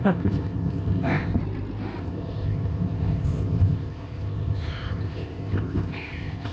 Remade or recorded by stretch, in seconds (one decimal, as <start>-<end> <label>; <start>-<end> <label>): 0.0-1.4 remade; 1.4-2.0 recorded; 2.0-6.5 remade